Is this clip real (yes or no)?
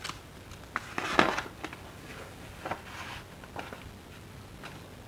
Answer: yes